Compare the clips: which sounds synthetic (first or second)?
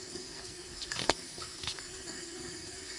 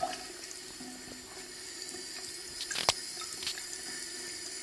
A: first